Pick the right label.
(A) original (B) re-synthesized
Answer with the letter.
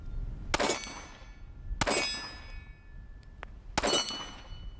A